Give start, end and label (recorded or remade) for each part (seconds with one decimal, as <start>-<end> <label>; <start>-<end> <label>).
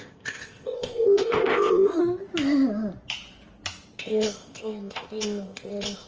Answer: 0.0-2.0 remade; 2.0-4.0 recorded; 4.0-6.1 remade